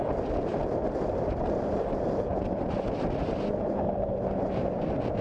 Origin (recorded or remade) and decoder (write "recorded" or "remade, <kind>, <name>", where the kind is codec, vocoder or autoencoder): recorded